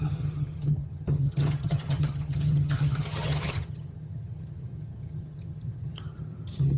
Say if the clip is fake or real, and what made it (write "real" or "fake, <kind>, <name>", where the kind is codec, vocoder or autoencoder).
fake, vocoder, HiFi-GAN